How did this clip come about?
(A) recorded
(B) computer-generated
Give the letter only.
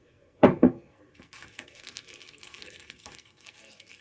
B